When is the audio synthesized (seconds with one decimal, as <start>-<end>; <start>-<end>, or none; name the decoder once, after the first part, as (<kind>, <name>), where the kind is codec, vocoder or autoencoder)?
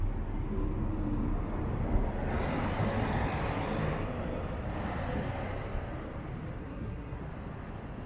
6.6-7.2 (codec, SNAC)